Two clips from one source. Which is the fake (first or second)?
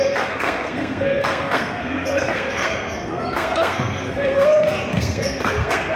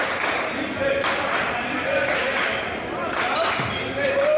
first